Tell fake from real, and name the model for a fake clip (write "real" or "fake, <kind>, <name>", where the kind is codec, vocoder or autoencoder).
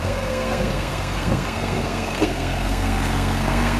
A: fake, codec, SNAC